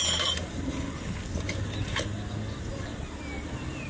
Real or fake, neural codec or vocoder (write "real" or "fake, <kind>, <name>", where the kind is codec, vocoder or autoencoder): real